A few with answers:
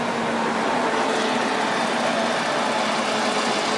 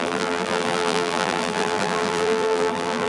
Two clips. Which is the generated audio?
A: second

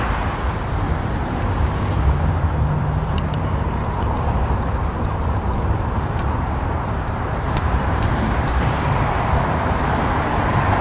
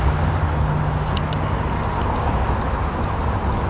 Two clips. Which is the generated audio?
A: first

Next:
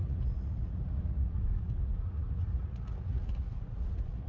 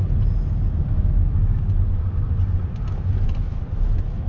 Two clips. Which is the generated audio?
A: first